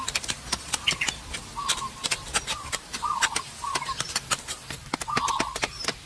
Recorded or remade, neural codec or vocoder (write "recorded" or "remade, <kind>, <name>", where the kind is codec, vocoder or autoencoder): recorded